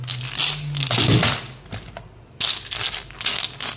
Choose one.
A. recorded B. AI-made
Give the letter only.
A